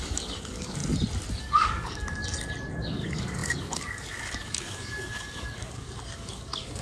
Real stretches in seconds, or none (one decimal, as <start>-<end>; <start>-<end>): 0.8-1.4; 2.2-2.8